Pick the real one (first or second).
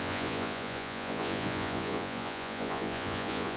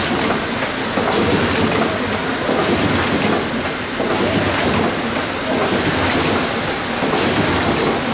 second